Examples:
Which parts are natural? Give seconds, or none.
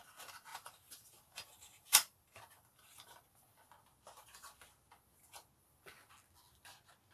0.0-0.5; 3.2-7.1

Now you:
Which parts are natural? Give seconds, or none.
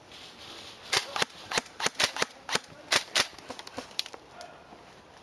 0.0-5.2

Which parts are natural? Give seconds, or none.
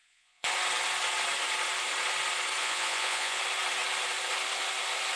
0.5-2.6; 3.4-5.2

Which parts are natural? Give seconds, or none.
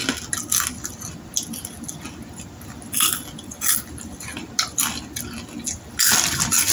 0.0-6.7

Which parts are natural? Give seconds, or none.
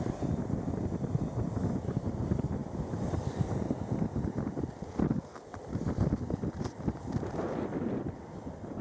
0.0-2.6; 3.3-5.5; 7.7-8.8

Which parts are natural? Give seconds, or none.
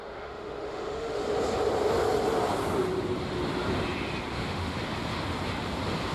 1.2-4.3; 4.8-6.1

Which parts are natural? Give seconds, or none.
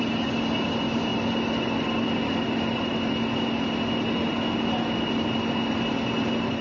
0.0-6.6